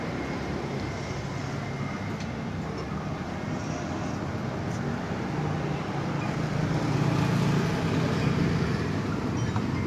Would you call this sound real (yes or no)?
yes